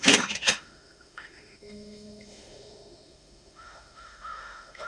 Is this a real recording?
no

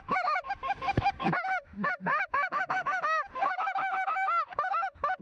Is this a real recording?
no